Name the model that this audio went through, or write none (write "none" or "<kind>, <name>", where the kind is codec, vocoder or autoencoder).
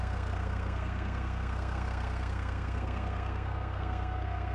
codec, SNAC